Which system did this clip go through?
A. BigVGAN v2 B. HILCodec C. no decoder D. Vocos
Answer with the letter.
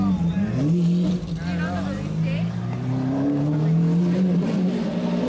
C